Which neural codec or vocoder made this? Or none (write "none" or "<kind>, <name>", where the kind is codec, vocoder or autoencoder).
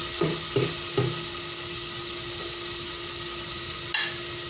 none